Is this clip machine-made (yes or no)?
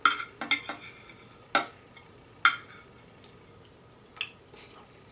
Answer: no